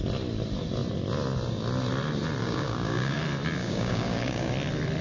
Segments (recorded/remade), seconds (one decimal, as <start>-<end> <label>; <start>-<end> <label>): 0.0-2.4 recorded; 2.4-3.2 remade; 3.2-3.6 recorded; 3.6-4.5 remade; 4.5-5.0 recorded